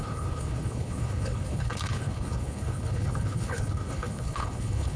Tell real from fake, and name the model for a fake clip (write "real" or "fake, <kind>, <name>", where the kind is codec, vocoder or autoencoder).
fake, codec, HILCodec